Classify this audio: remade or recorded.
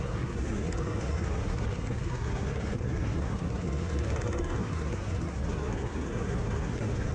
remade